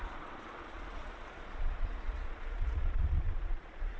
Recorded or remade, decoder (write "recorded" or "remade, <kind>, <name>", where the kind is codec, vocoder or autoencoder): remade, vocoder, Vocos